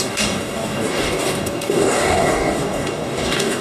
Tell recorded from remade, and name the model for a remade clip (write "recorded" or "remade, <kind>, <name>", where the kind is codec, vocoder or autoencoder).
remade, codec, DAC